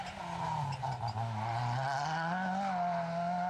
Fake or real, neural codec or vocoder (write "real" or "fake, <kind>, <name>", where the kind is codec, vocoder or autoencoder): real